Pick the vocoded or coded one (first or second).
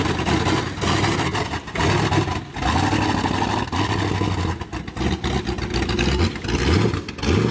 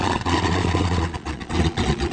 second